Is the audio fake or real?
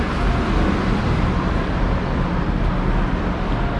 real